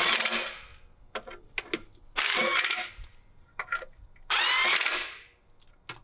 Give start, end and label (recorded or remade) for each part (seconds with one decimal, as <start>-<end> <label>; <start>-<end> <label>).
0.0-6.0 recorded